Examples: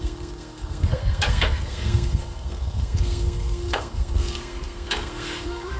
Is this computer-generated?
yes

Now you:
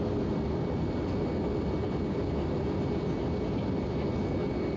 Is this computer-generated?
no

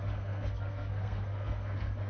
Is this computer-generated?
yes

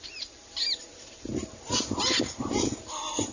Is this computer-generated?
no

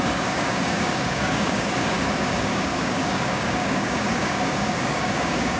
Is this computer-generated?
yes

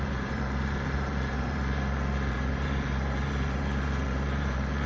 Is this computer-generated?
yes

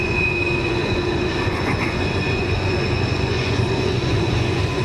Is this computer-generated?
yes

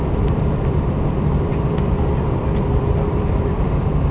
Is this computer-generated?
yes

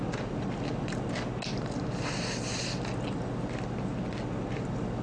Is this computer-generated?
no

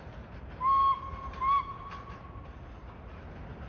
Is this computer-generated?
no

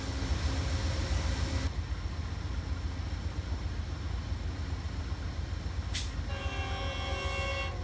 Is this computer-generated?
no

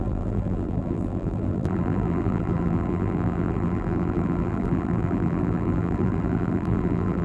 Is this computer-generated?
yes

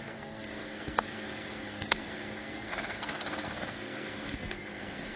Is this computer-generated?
yes